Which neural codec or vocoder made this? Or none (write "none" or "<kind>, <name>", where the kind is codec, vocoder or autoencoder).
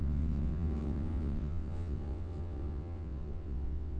vocoder, WaveNeXt